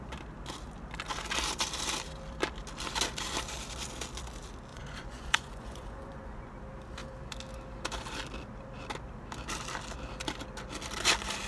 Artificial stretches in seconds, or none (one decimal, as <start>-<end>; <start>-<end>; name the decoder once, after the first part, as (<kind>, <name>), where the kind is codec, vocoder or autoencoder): 4.7-6.5 (vocoder, Vocos)